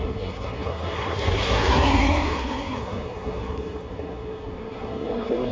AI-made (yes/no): yes